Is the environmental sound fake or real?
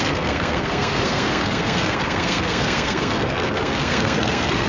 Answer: fake